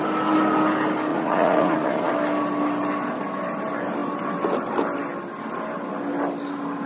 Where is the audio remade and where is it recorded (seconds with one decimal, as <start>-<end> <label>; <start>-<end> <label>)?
0.0-1.1 recorded; 1.1-2.1 remade; 2.1-6.9 recorded